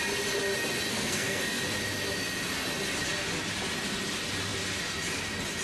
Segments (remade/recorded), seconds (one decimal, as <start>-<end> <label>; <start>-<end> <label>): 0.0-0.9 recorded; 0.9-1.6 remade; 1.6-5.6 recorded